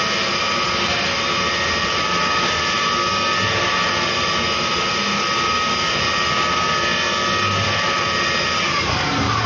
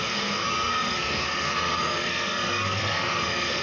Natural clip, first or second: first